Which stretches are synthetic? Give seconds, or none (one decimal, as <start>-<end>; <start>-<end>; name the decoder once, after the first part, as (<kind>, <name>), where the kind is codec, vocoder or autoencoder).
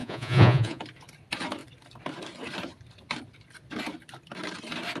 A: 0.0-0.8 (vocoder, Vocos)